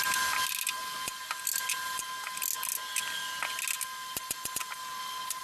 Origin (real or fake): real